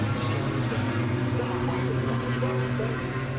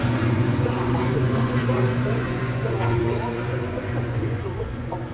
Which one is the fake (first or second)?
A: second